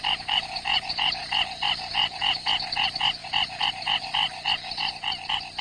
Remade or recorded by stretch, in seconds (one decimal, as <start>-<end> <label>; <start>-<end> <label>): 0.0-1.2 recorded; 1.2-2.2 remade; 2.2-3.2 recorded; 3.2-3.7 remade; 3.7-5.6 recorded